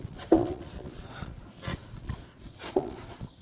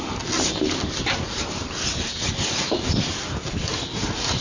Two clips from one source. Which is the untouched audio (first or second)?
second